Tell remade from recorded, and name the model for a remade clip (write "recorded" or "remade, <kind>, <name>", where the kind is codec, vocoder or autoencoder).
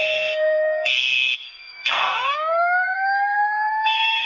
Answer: remade, codec, SNAC